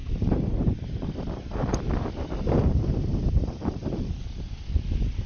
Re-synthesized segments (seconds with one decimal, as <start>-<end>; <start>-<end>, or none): 0.0-1.1; 2.6-4.2